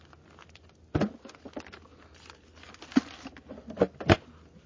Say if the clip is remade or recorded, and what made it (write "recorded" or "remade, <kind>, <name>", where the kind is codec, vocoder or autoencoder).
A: recorded